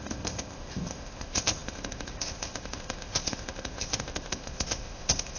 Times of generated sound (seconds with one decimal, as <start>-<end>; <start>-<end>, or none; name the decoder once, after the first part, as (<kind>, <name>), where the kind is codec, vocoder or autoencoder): 0.0-5.4 (codec, ZipCodec)